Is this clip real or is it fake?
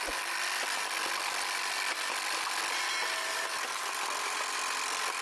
real